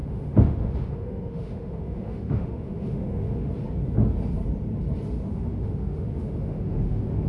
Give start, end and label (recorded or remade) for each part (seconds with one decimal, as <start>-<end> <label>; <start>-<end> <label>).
0.0-3.5 remade; 3.5-5.3 recorded; 5.3-7.3 remade